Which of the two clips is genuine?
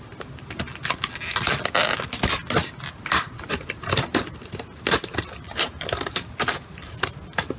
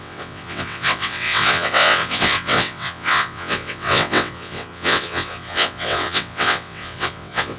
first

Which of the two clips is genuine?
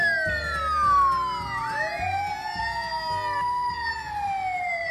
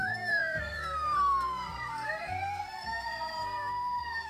first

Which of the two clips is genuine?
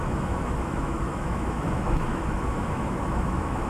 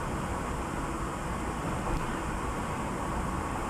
second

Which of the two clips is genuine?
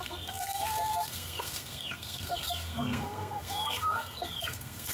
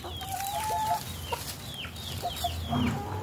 second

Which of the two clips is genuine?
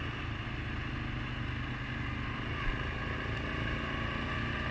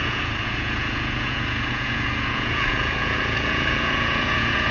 first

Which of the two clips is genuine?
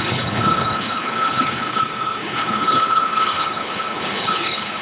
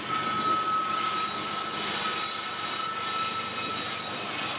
second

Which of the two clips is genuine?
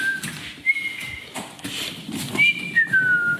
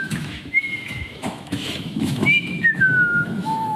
first